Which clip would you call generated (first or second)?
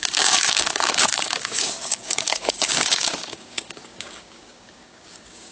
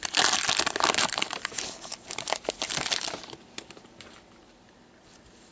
first